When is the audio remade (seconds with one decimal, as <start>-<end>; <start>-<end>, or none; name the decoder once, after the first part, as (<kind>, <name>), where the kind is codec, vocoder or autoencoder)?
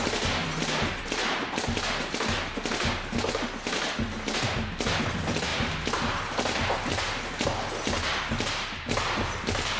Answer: none